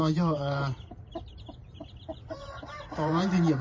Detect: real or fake fake